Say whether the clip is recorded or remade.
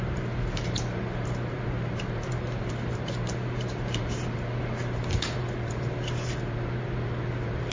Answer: remade